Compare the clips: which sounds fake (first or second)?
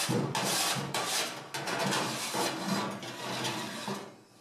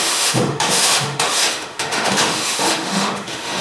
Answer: second